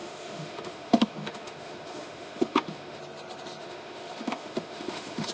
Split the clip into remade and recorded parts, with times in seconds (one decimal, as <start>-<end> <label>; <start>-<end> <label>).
0.0-3.0 remade; 3.0-3.6 recorded; 3.6-5.3 remade